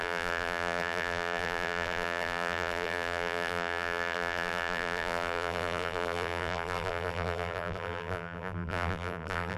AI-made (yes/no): yes